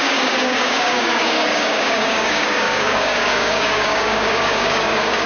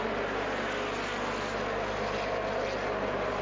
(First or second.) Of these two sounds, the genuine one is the second